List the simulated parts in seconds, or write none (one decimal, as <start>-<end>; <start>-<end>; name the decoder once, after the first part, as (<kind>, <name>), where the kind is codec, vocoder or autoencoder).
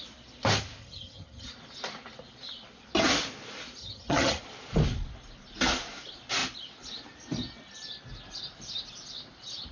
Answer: 0.8-1.5 (vocoder, HiFi-GAN); 3.8-4.4